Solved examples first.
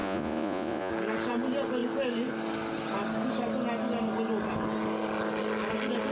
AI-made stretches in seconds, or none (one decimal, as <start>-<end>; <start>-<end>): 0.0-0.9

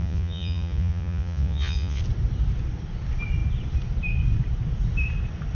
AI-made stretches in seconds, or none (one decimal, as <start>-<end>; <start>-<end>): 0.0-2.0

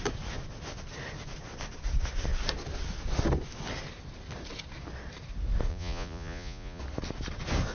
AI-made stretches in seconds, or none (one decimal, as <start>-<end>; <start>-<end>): 5.7-6.8

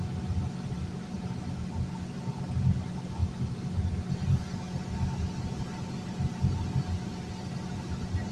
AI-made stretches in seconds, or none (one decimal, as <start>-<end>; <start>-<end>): none

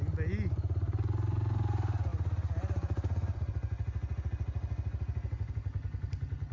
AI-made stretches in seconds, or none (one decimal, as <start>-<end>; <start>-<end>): none